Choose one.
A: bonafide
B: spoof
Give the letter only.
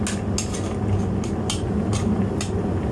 A